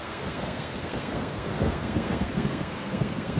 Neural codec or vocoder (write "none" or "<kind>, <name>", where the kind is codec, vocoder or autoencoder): codec, SNAC